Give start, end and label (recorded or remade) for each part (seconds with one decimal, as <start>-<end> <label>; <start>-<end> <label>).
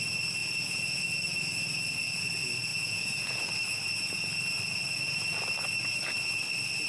0.0-0.4 recorded; 0.4-1.0 remade; 1.0-2.7 recorded; 2.7-3.4 remade; 3.4-6.9 recorded